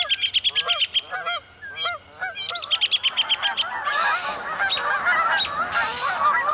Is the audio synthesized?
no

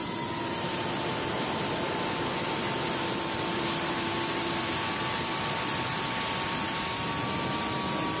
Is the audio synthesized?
no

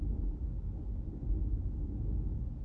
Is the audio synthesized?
no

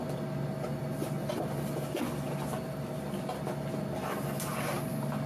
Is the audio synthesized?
no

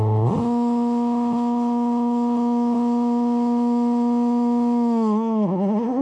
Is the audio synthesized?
yes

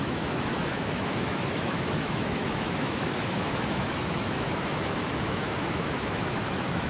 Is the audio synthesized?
yes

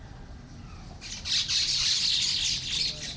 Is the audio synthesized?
no